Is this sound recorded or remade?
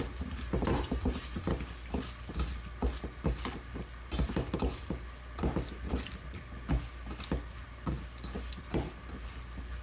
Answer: recorded